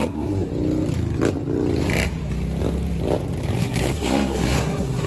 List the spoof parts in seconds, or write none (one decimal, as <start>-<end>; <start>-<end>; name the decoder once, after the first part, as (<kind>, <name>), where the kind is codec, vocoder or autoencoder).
0.0-0.5 (codec, SNAC); 3.6-5.1